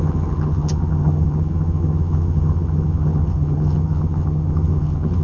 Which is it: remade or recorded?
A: remade